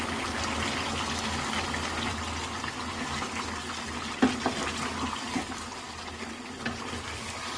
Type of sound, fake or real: real